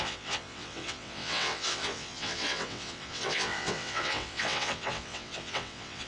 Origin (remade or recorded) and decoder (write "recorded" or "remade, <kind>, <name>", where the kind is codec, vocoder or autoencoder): remade, vocoder, WaveNeXt